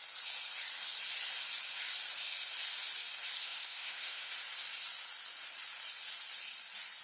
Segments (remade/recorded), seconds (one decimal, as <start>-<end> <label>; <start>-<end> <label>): 0.0-3.4 recorded; 3.4-4.3 remade; 4.3-7.0 recorded